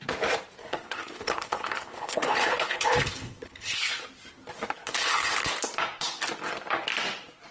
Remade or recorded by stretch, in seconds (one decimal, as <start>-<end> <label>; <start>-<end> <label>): 0.0-0.6 recorded; 0.6-3.9 remade; 3.9-4.8 recorded; 4.8-5.5 remade; 5.5-7.5 recorded